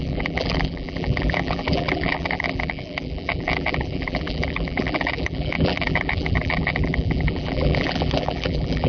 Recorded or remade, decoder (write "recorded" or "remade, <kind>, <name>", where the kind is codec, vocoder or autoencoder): remade, vocoder, BigVGAN v2